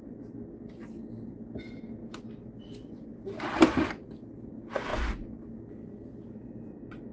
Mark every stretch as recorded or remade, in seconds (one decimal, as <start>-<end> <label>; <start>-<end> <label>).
0.0-7.1 recorded